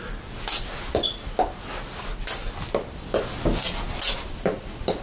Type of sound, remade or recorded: recorded